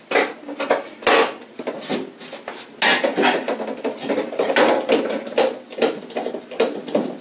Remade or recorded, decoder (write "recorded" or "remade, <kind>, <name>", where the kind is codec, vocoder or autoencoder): recorded